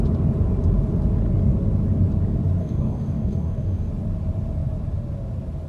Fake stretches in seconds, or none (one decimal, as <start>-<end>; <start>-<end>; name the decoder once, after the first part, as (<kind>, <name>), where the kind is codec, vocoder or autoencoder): 2.6-3.9 (codec, DAC)